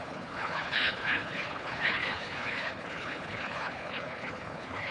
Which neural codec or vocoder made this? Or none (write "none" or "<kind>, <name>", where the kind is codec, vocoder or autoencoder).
codec, HILCodec